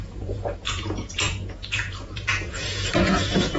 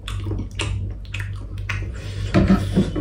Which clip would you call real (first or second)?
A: second